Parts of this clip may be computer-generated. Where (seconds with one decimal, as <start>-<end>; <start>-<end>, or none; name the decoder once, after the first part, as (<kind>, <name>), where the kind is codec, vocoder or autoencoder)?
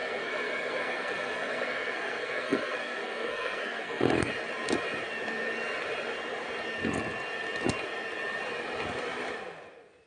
0.0-4.3 (codec, SNAC)